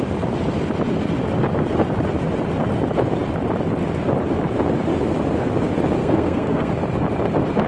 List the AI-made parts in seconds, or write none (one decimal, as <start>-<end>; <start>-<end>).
6.0-6.7